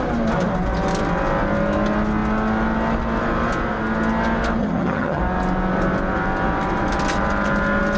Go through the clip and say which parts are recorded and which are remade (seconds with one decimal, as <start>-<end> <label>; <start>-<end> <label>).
0.0-4.6 recorded; 4.6-5.2 remade; 5.2-8.0 recorded